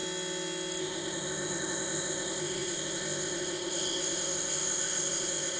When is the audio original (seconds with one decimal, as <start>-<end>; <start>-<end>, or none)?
0.0-0.8